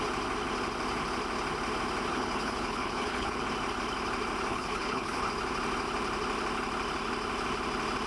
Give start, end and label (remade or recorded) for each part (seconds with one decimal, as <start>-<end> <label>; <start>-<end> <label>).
0.0-2.1 recorded; 2.1-3.4 remade; 3.4-4.5 recorded; 4.5-5.3 remade; 5.3-8.1 recorded